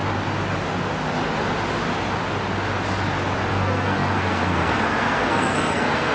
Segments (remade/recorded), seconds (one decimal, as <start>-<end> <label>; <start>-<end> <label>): 0.0-3.5 recorded; 3.5-6.1 remade